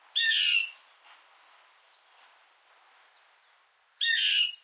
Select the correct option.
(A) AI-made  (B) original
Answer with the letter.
B